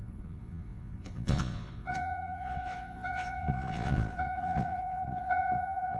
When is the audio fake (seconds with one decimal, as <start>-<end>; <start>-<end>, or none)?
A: 0.0-6.0